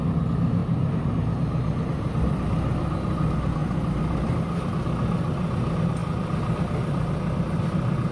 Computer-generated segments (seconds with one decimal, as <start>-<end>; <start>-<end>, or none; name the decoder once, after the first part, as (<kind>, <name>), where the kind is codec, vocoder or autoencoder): 0.6-1.1 (vocoder, BigVGAN v2); 3.6-4.7